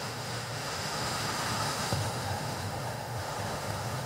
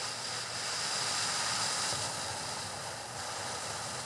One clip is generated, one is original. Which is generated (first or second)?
first